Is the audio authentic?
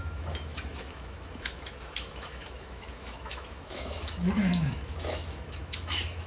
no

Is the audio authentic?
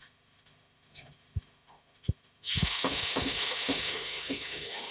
no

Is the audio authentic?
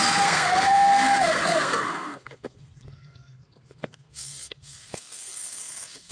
no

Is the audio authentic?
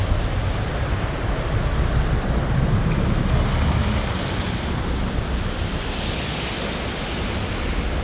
yes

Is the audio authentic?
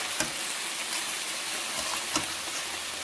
yes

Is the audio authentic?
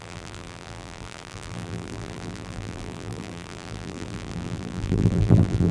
no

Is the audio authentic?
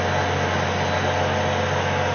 yes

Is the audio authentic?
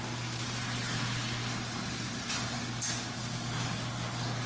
yes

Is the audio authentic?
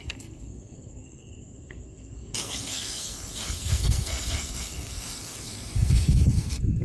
no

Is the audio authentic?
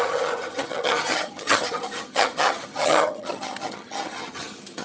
no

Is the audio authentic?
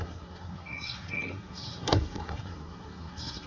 no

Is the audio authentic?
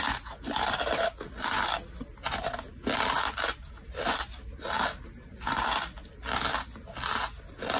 yes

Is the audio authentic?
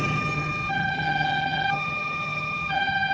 no